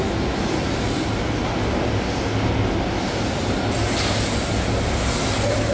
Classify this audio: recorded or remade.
recorded